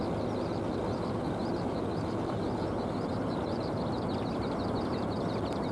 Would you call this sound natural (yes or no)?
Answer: yes